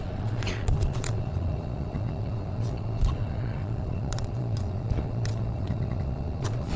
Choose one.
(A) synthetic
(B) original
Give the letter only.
A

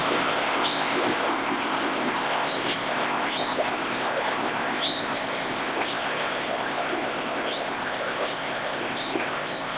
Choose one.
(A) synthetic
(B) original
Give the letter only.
A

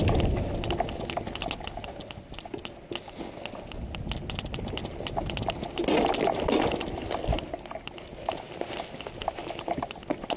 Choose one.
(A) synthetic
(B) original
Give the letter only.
B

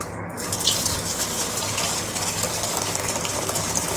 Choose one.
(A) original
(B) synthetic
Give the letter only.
B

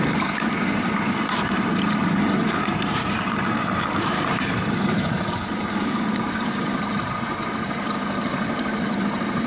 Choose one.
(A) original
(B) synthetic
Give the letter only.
B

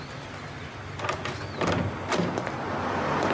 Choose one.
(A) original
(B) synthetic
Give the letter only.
A